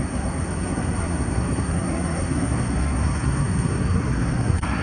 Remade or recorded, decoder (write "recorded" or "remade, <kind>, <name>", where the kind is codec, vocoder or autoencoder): remade, codec, SNAC